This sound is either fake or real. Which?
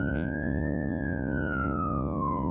fake